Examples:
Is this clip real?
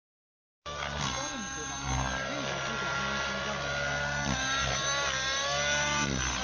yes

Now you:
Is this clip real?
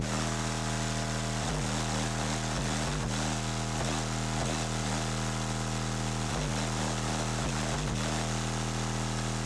yes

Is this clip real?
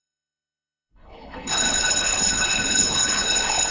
no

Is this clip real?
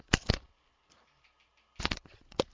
yes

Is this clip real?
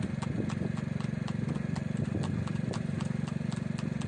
yes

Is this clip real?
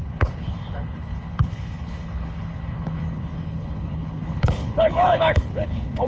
no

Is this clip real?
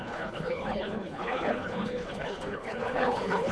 no